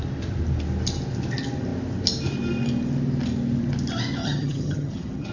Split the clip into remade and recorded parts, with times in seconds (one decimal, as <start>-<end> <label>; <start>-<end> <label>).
0.0-4.2 recorded; 4.2-5.3 remade